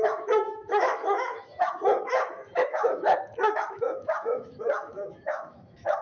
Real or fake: fake